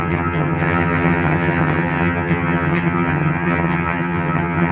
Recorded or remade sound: remade